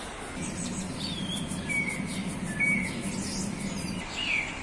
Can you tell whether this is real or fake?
real